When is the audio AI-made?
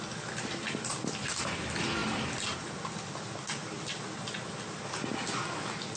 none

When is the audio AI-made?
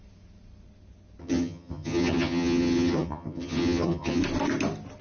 1.2-4.2